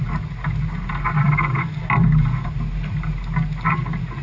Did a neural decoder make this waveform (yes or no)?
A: no